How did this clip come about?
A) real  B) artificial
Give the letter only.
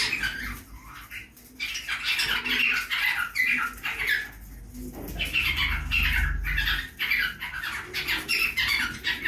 A